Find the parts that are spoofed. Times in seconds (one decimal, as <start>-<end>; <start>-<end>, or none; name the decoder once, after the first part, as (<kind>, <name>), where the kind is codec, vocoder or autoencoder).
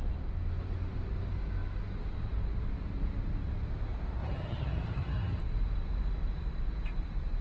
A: 4.2-5.4 (vocoder, HiFi-GAN)